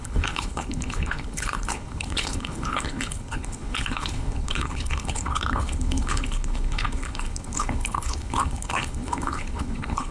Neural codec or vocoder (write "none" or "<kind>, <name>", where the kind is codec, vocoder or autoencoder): codec, HILCodec